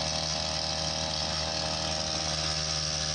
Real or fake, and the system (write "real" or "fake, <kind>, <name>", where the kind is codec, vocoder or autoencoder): real